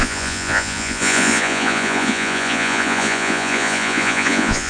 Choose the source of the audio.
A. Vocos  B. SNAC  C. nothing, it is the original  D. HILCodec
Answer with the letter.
A